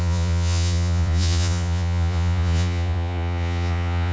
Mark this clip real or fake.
fake